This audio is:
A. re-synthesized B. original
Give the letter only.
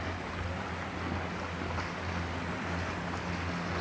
B